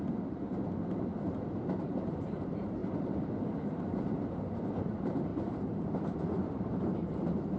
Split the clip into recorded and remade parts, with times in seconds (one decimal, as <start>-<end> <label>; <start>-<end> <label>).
0.0-1.1 remade; 1.1-1.8 recorded; 1.8-7.6 remade